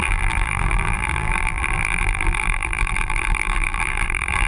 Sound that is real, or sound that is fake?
fake